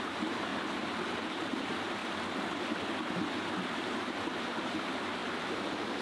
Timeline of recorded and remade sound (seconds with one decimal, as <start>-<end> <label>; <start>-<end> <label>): 0.0-0.5 remade; 0.5-1.1 recorded; 1.1-2.0 remade; 2.0-3.7 recorded; 3.7-5.2 remade; 5.2-6.0 recorded